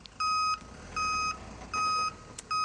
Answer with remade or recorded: recorded